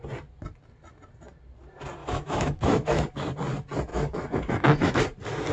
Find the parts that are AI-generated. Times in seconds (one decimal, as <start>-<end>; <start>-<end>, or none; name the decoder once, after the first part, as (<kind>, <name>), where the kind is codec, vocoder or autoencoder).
2.0-3.1 (autoencoder, DAC-VAE); 3.9-5.0